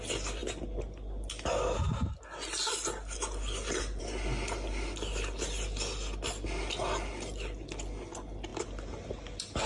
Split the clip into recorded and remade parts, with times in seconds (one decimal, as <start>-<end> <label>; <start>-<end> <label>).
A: 0.0-9.7 recorded